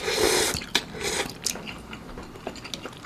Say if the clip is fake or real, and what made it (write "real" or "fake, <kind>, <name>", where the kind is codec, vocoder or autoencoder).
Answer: real